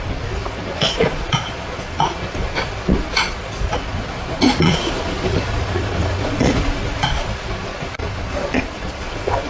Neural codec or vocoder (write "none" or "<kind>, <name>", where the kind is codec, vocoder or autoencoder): vocoder, Vocos